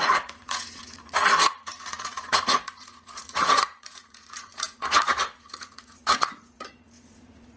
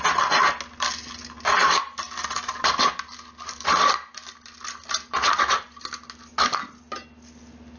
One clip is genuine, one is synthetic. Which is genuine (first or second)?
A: second